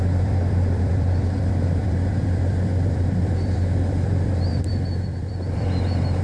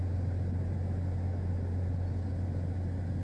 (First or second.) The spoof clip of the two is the first